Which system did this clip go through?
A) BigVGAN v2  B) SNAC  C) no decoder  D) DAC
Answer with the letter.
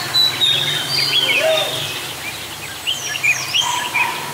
C